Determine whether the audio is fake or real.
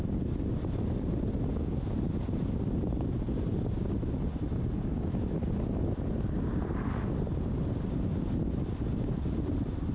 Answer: real